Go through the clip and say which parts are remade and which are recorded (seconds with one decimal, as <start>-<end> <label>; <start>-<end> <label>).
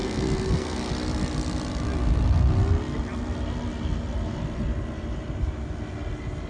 0.0-0.9 remade; 0.9-6.5 recorded